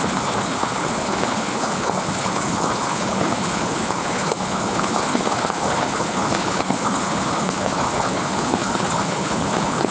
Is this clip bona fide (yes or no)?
no